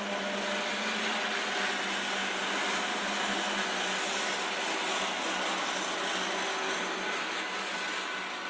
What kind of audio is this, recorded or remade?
recorded